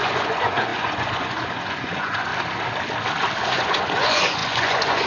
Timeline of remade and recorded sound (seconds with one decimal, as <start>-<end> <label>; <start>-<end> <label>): 0.0-2.3 remade; 2.3-3.4 recorded; 3.4-5.1 remade